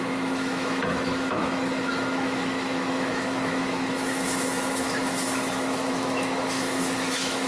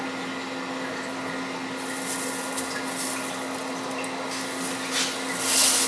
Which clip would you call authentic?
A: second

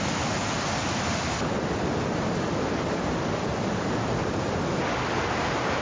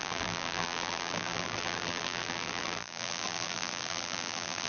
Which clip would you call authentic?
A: first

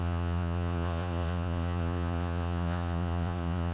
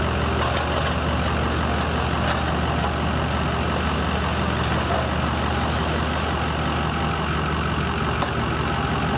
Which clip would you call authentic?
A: second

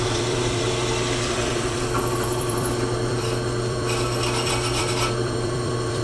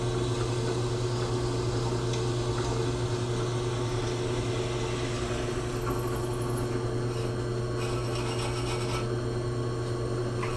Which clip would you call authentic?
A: second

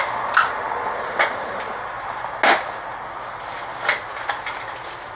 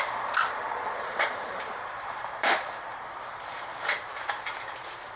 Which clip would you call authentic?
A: first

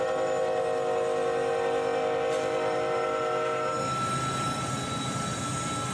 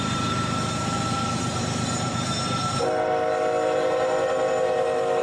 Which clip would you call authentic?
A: first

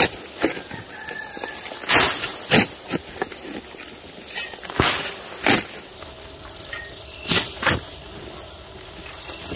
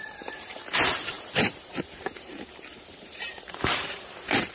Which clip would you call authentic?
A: first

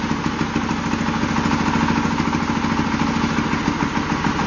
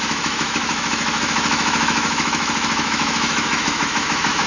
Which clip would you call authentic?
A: first